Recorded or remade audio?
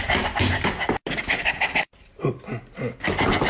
recorded